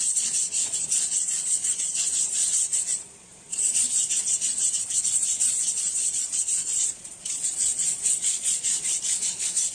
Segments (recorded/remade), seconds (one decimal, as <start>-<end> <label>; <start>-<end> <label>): 0.0-9.7 remade